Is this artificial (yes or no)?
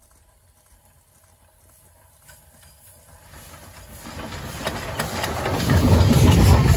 no